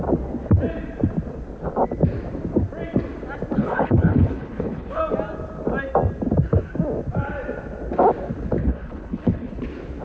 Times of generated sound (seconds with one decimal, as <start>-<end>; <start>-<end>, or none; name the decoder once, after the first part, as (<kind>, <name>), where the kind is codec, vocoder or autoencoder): 3.6-5.0 (codec, HILCodec); 8.6-9.6